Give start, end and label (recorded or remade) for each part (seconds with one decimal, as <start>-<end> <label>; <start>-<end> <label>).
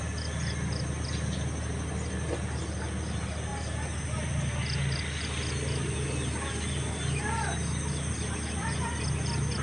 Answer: 0.0-9.6 recorded